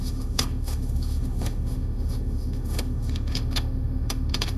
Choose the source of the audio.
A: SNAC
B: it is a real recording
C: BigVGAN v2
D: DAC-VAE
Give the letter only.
D